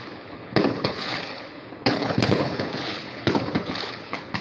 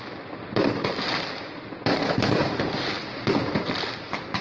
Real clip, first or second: second